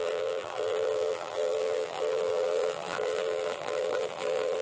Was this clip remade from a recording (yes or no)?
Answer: yes